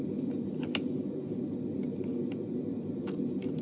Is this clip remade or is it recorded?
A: recorded